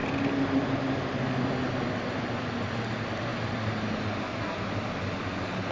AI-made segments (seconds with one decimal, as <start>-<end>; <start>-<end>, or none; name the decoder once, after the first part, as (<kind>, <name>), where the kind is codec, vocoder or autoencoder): none